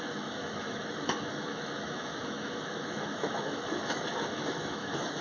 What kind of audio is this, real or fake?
fake